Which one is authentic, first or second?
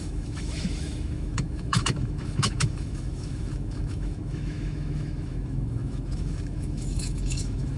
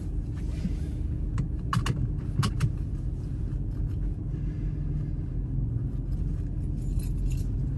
second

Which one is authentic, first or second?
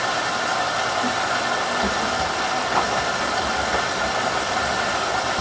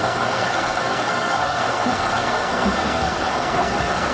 first